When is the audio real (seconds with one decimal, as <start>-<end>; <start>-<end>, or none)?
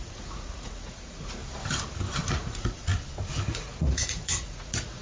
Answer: 1.4-2.3; 2.9-3.5